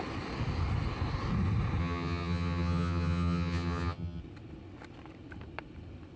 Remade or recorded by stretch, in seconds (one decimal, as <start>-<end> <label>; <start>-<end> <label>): 0.0-1.8 recorded; 1.8-4.2 remade; 4.2-6.2 recorded